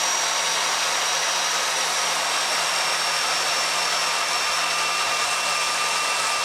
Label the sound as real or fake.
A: real